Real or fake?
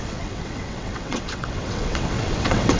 fake